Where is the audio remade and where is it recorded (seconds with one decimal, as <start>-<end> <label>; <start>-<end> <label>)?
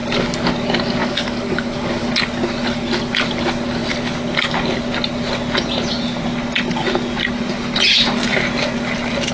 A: 0.0-0.5 remade; 0.5-1.0 recorded; 1.0-2.1 remade; 2.1-9.3 recorded